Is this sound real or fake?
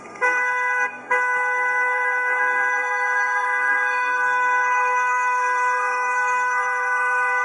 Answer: fake